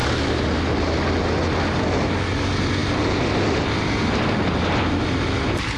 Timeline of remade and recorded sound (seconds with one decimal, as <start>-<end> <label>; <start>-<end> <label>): 0.0-5.8 recorded